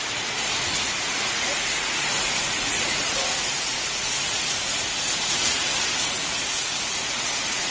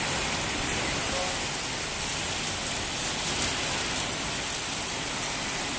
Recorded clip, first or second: second